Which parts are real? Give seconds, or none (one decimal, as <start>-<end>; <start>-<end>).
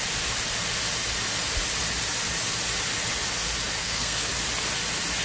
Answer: 0.0-3.8; 4.3-5.2